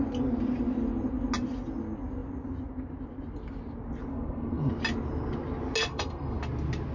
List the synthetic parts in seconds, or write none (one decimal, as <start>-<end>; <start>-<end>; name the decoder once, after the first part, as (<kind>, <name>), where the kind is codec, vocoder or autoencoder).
4.1-4.7 (codec, SNAC); 5.9-6.4